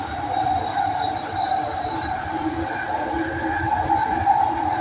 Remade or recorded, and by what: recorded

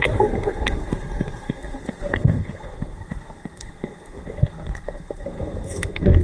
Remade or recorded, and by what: remade, codec, SNAC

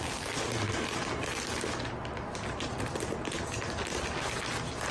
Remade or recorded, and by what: recorded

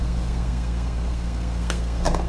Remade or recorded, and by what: remade, codec, SNAC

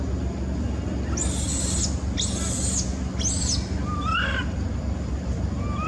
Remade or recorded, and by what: recorded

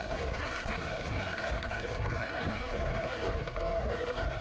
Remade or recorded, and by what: remade, codec, SNAC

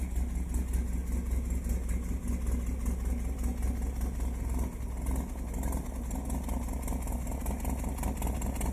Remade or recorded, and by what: recorded